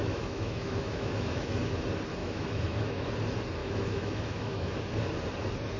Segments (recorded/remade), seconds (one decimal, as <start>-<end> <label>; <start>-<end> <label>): 0.0-1.6 remade; 1.6-2.2 recorded; 2.2-3.1 remade; 3.1-3.6 recorded; 3.6-4.8 remade; 4.8-5.8 recorded